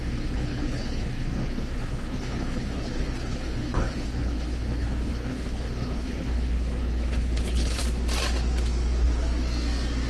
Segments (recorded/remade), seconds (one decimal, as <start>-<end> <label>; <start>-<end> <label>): 0.0-7.8 remade; 7.8-10.1 recorded